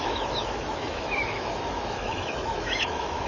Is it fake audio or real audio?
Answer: fake